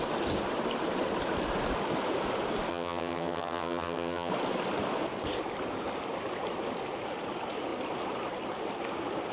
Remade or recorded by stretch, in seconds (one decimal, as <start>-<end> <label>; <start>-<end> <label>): 0.0-2.7 recorded; 2.7-4.3 remade; 4.3-9.3 recorded